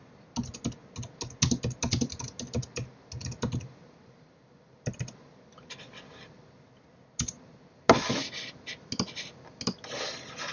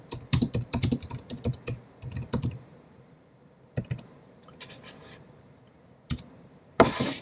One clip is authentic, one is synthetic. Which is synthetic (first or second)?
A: second